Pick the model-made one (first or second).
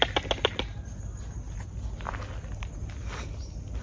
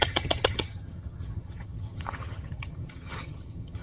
second